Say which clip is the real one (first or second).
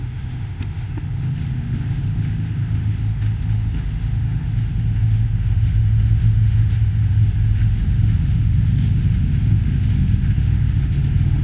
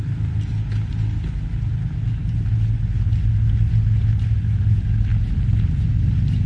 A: second